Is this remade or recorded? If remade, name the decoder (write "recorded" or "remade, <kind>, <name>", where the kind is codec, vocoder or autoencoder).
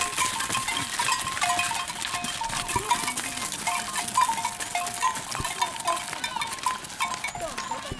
recorded